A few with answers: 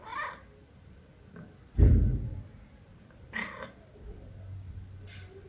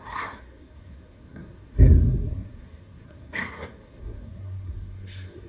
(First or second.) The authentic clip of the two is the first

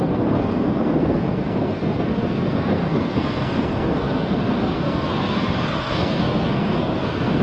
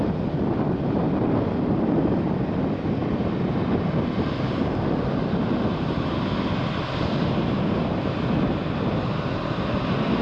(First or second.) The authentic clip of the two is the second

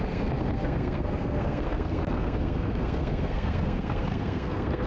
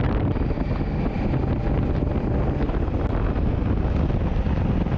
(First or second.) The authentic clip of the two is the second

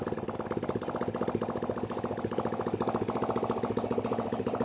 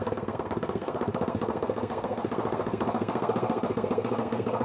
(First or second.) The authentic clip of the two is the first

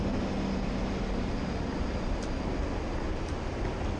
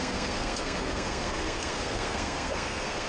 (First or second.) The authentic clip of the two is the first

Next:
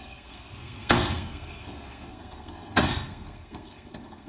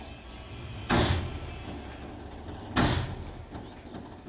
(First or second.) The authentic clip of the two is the second